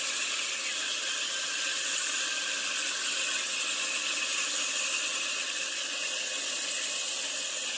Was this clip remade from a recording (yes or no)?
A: no